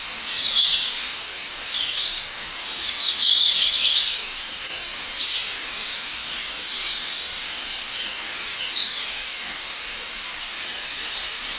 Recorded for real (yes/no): no